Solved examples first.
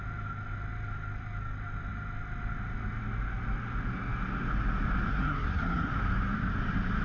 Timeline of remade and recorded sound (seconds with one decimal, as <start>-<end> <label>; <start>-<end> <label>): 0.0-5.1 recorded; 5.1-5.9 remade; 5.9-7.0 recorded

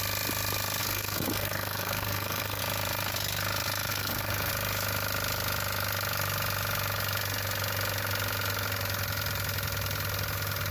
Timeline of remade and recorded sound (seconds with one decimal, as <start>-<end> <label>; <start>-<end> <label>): 0.0-0.8 recorded; 0.8-2.6 remade; 2.6-3.9 recorded; 3.9-4.5 remade; 4.5-10.7 recorded

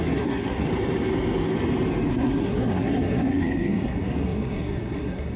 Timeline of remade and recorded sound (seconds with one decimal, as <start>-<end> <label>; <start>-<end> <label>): 0.0-0.7 remade; 0.7-2.1 recorded; 2.1-5.4 remade

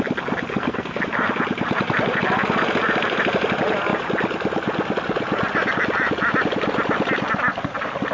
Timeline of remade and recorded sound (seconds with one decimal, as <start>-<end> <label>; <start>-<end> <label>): 0.0-0.5 recorded; 0.5-1.0 remade; 1.0-8.1 recorded

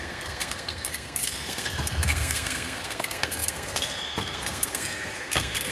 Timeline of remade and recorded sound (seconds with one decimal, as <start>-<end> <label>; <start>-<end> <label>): 0.0-5.7 remade

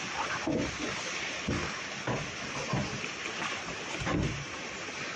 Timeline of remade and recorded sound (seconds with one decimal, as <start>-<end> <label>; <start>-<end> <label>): 0.0-5.2 recorded

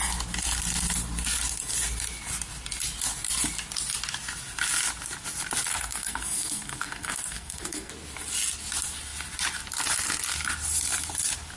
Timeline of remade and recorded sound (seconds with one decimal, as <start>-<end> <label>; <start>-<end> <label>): 0.0-5.7 recorded; 5.7-7.9 remade; 7.9-11.6 recorded